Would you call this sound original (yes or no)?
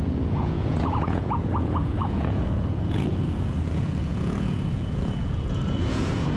no